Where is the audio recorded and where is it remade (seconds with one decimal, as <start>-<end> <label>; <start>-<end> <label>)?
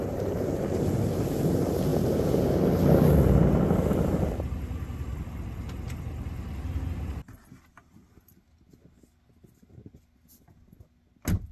0.0-0.6 remade; 0.6-11.5 recorded